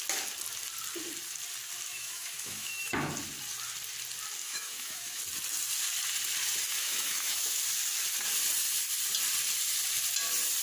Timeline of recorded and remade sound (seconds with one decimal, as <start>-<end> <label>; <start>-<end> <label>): 0.0-1.9 recorded; 1.9-3.1 remade; 3.1-4.4 recorded; 4.4-5.2 remade; 5.2-6.8 recorded; 6.8-7.6 remade; 7.6-10.6 recorded